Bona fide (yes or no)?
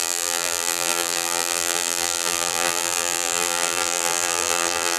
no